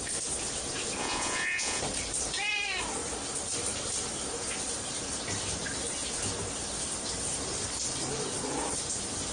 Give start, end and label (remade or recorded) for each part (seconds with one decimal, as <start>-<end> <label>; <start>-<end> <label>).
0.0-1.0 recorded; 1.0-1.8 remade; 1.8-9.3 recorded